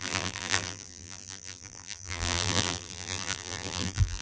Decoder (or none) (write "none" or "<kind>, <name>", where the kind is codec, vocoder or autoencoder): vocoder, BigVGAN v2